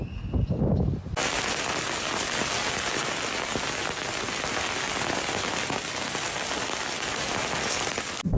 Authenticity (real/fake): real